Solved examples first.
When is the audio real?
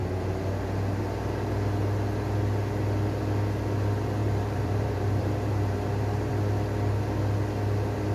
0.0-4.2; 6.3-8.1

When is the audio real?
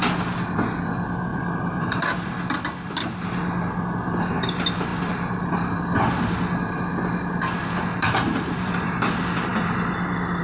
0.0-1.3; 2.4-7.9; 8.7-10.4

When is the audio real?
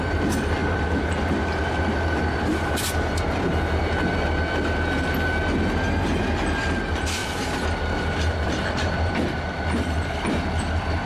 0.0-0.6; 2.7-7.2; 9.4-11.1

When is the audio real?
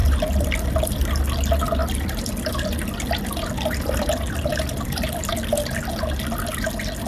1.0-1.8; 5.3-7.1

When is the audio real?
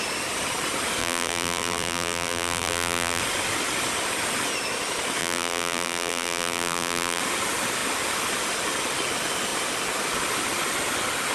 0.0-1.0; 3.2-5.2; 7.2-11.3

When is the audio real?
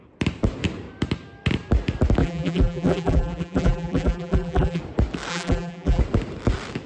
0.0-2.2; 4.8-5.3; 6.0-6.9